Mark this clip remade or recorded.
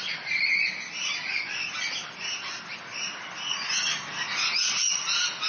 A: recorded